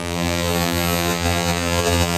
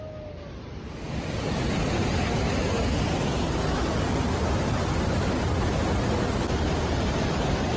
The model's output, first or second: first